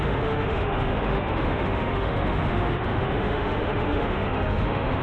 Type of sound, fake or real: fake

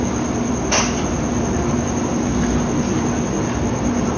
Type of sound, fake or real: real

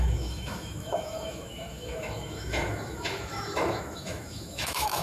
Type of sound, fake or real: fake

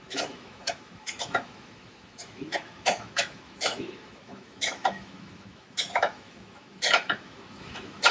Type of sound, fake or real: fake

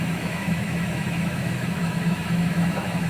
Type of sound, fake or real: fake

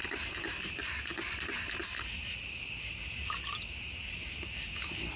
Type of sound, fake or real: real